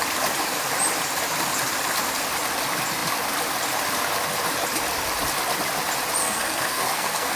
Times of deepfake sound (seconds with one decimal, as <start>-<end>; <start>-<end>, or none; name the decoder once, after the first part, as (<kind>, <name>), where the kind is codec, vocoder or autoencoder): 6.2-7.4 (codec, SNAC)